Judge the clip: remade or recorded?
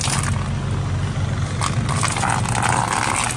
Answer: recorded